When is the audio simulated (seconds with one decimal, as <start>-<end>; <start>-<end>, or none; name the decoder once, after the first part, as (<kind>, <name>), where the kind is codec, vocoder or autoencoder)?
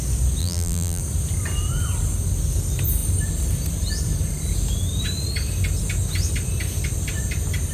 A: 0.4-1.0 (vocoder, BigVGAN v2)